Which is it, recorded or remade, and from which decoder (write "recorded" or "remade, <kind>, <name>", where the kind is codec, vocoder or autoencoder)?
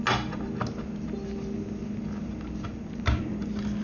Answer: recorded